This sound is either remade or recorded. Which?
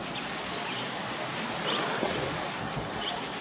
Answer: recorded